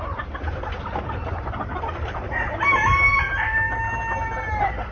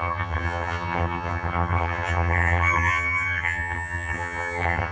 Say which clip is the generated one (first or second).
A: second